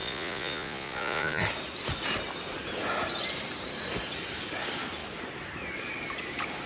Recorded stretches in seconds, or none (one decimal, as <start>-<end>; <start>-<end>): 1.4-6.7